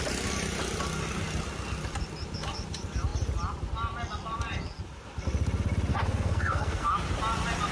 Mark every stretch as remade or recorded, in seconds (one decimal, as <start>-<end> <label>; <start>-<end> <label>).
0.0-5.9 recorded; 5.9-6.9 remade; 6.9-7.7 recorded